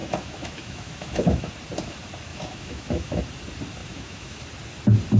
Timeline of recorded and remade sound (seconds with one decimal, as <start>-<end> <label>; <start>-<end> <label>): 0.0-1.5 remade; 1.5-2.3 recorded; 2.3-3.2 remade; 3.2-3.8 recorded; 3.8-4.4 remade; 4.4-5.2 recorded

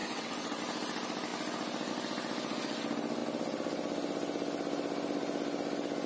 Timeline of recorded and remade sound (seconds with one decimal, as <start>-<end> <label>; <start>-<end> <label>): 0.0-0.6 remade; 0.6-6.1 recorded

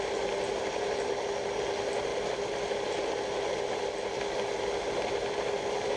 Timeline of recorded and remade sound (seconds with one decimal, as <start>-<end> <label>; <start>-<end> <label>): 0.0-6.0 recorded

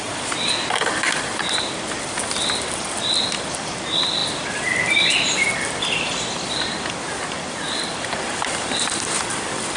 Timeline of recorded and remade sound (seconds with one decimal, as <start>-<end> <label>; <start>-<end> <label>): 0.0-9.8 remade

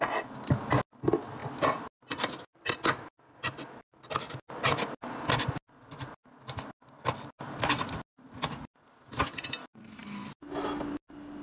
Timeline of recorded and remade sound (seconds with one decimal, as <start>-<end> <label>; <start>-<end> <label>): 0.0-11.4 recorded

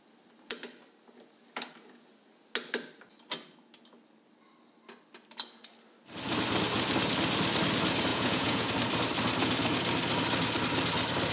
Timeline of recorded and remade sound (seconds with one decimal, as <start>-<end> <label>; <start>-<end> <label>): 0.0-8.1 recorded; 8.1-8.7 remade; 8.7-11.3 recorded